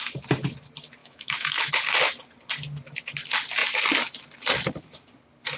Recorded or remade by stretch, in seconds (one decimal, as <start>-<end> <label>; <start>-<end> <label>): 0.0-1.0 recorded; 1.0-1.7 remade; 1.7-5.6 recorded

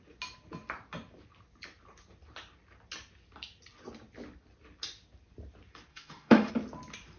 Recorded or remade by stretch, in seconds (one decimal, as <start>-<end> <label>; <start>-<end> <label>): 0.0-5.9 recorded; 5.9-6.5 remade; 6.5-7.2 recorded